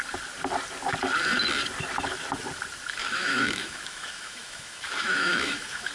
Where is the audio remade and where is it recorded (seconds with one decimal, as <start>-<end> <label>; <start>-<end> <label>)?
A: 0.0-3.0 recorded; 3.0-5.9 remade